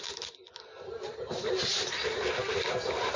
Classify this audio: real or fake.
real